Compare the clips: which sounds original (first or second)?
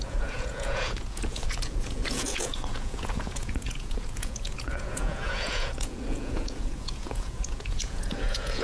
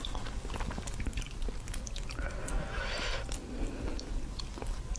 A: second